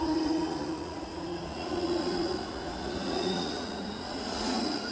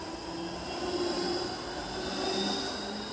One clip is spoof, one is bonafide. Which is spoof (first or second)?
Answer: first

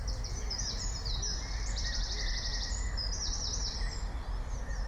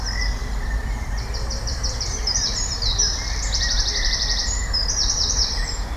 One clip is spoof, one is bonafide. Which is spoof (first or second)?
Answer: second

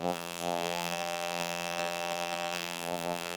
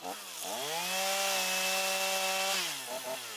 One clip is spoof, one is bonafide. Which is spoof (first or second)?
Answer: first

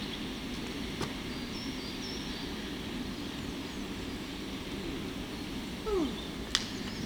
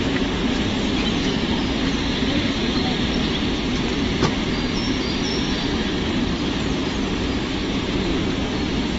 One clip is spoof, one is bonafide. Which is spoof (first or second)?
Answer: second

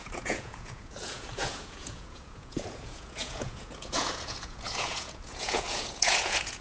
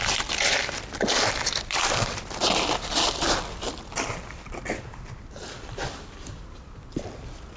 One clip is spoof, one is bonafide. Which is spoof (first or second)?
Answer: first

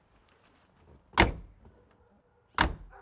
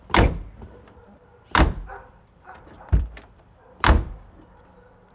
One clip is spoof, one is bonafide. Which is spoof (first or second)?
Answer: second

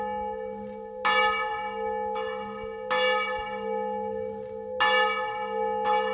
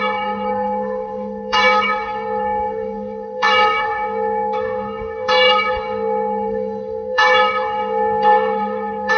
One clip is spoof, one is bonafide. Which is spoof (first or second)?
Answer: second